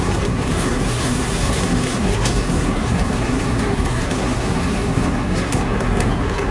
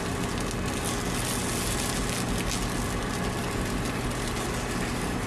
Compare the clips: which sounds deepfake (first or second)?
first